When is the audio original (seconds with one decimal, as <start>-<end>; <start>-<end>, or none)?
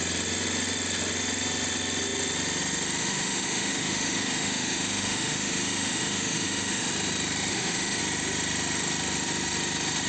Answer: 0.0-3.0; 6.9-7.5; 8.0-10.1